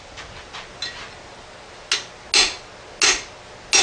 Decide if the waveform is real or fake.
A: real